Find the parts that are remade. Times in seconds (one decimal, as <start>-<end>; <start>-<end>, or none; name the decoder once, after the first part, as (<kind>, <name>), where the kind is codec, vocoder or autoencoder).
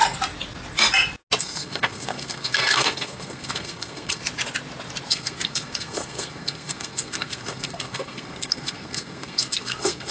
1.4-4.2 (codec, SNAC); 5.1-10.1